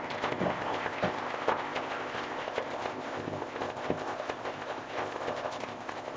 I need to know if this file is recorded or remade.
remade